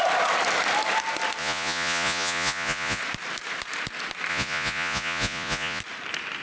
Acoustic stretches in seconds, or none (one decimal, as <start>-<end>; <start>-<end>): 0.0-1.4; 3.0-4.3; 5.8-6.4